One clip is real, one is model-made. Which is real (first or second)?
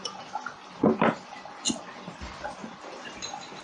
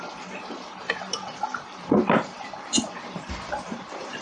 first